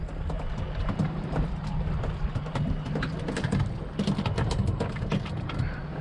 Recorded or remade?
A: recorded